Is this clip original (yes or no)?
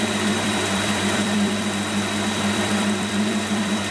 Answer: no